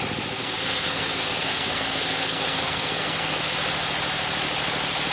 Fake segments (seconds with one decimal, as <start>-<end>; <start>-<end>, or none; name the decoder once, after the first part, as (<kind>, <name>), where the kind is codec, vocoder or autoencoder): 0.4-3.5 (codec, SNAC)

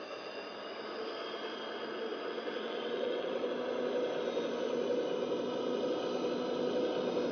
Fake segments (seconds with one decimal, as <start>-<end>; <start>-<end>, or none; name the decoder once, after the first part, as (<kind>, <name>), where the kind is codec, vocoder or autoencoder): 2.1-3.4 (vocoder, WaveNeXt)

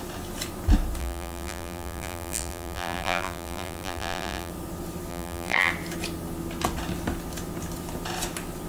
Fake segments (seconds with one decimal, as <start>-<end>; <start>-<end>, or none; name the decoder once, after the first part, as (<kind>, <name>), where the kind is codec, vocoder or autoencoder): 1.0-4.5 (vocoder, BigVGAN v2); 5.1-5.7

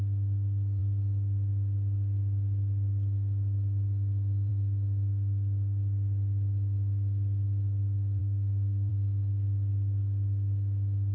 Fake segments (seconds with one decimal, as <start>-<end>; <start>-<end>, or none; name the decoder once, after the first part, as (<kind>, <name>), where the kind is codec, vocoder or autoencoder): 8.2-8.9 (codec, SNAC)

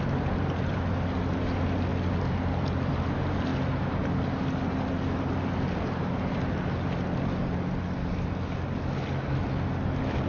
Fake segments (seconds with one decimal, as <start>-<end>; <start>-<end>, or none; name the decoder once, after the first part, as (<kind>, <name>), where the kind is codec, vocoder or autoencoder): none

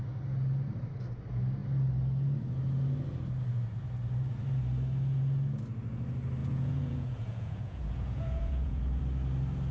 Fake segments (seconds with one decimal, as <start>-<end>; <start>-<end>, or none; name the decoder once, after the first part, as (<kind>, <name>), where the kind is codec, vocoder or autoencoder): 6.4-9.0 (vocoder, Vocos)